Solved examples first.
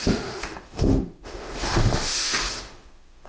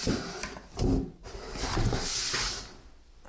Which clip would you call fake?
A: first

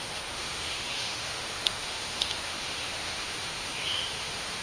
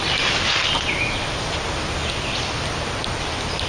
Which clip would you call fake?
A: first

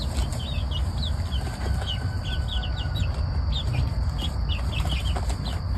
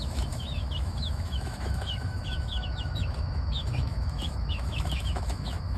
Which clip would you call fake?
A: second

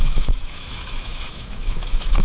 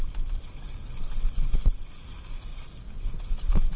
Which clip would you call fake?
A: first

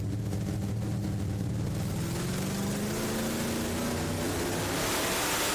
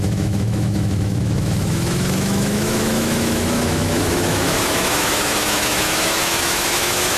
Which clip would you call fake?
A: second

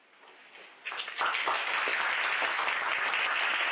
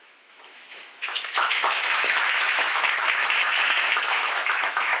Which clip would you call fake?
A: second